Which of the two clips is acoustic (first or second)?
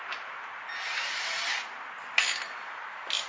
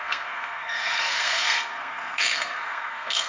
first